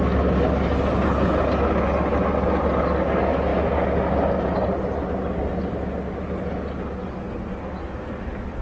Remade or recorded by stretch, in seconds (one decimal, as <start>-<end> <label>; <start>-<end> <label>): 0.0-8.6 recorded